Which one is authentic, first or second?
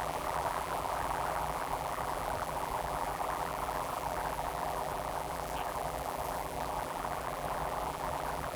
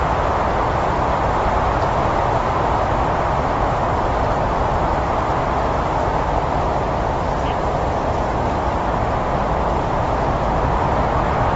second